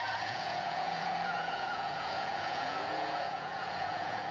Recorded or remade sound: remade